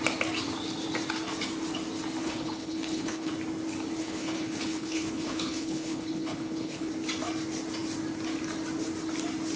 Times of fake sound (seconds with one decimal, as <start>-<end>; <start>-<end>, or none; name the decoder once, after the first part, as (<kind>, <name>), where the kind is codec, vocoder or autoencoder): 2.2-3.3 (codec, HILCodec); 4.0-6.9